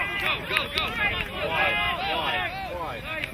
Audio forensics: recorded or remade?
recorded